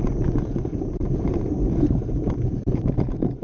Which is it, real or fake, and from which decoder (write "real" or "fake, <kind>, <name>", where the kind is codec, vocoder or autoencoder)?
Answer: fake, vocoder, BigVGAN v2